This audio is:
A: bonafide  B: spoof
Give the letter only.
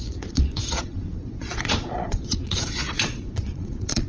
B